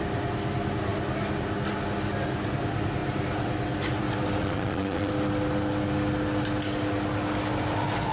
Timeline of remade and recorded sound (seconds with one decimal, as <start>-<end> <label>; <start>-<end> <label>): 0.0-4.4 recorded; 4.4-5.1 remade; 5.1-8.1 recorded